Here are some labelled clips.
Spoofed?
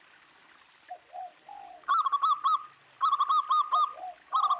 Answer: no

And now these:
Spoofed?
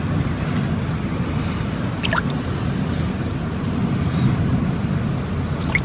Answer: no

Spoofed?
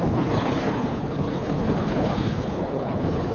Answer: yes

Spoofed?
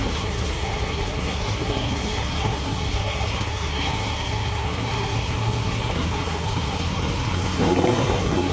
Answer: yes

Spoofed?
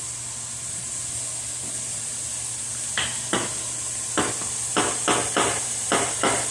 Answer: no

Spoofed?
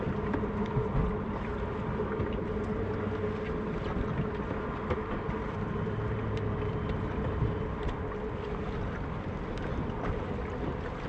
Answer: no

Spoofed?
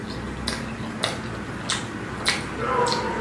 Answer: no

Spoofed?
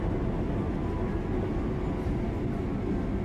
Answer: no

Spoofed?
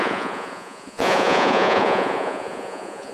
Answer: yes